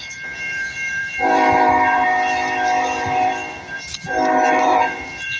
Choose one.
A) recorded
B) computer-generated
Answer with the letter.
B